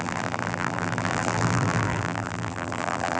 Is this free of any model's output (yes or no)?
no